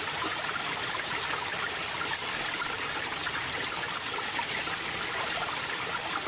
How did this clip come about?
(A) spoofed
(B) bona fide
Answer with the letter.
A